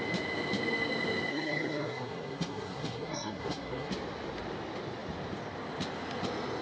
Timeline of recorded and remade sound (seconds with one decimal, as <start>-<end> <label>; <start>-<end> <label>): 0.0-1.3 recorded; 1.3-3.9 remade; 3.9-6.6 recorded